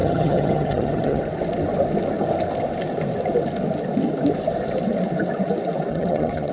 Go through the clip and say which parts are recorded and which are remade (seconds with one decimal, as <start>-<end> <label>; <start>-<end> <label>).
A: 0.0-1.2 remade; 1.2-5.9 recorded; 5.9-6.5 remade